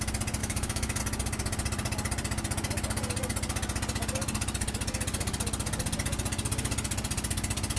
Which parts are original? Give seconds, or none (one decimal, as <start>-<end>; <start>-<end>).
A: 0.0-0.4; 1.0-7.8